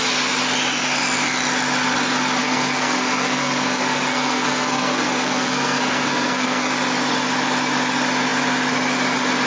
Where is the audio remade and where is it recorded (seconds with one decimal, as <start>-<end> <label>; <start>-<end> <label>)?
0.0-2.4 recorded; 2.4-6.7 remade; 6.7-9.5 recorded